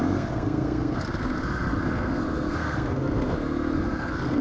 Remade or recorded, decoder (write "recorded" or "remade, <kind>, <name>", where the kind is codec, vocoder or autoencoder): remade, codec, SNAC